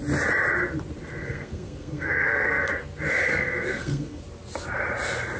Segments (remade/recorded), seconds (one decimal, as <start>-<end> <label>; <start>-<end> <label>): 0.0-1.2 recorded; 1.2-2.7 remade; 2.7-3.3 recorded; 3.3-4.2 remade; 4.2-5.4 recorded